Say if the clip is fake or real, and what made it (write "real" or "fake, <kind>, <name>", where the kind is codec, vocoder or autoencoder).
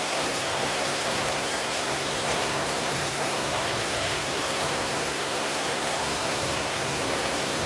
fake, codec, SNAC